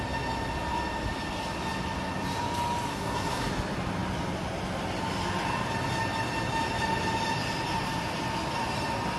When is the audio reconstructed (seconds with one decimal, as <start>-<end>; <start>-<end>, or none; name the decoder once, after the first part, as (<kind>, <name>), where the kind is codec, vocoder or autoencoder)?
2.9-3.5 (codec, SNAC)